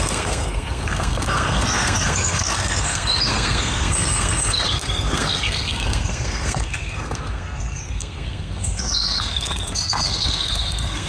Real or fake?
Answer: fake